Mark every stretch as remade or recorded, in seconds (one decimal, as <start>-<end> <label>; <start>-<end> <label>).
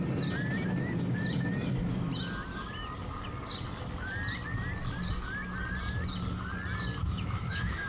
0.0-7.0 recorded; 7.0-7.9 remade